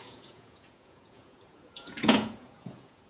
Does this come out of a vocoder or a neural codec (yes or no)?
yes